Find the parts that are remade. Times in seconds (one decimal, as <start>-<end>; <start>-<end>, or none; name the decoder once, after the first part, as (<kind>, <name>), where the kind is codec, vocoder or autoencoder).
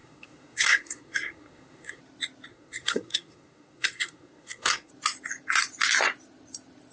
0.0-2.0 (codec, SNAC); 2.5-4.9